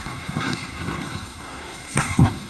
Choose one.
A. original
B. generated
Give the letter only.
B